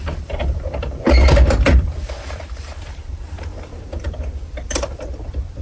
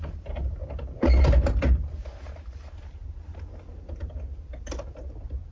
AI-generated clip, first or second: first